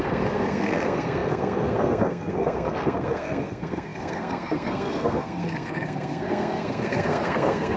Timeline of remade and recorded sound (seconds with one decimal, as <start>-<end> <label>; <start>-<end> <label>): 0.0-7.8 remade